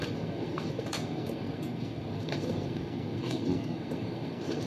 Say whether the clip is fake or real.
fake